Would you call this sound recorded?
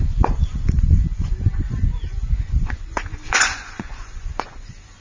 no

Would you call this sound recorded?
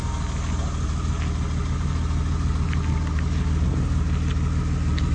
yes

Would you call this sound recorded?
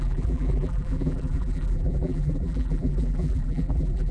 no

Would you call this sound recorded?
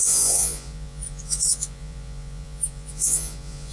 no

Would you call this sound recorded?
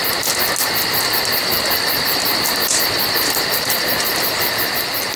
yes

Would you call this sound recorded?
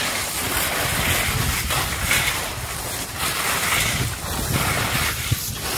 yes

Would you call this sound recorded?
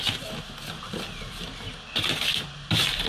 yes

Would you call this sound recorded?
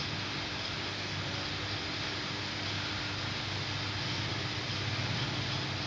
yes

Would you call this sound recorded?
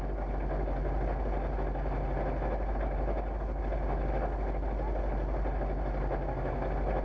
yes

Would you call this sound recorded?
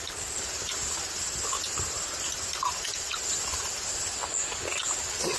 yes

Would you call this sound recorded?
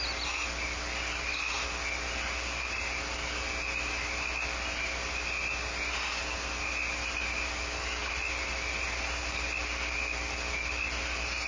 yes